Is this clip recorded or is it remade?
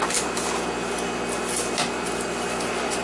recorded